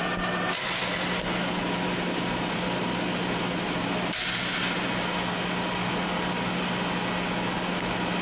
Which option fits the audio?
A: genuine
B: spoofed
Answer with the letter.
A